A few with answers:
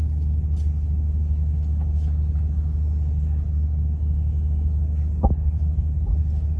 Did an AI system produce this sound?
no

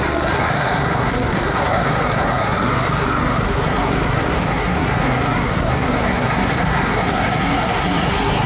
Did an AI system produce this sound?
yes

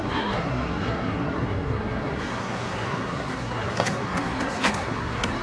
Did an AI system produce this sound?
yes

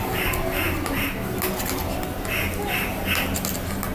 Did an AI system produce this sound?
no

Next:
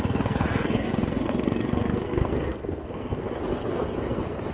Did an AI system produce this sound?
yes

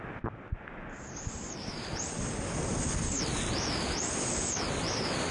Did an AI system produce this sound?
no